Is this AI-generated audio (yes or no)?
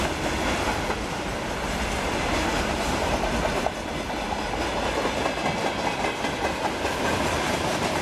no